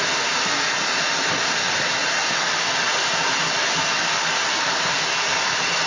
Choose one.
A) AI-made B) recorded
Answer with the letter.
B